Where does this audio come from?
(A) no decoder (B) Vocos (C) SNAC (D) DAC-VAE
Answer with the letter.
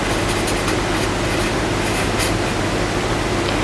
A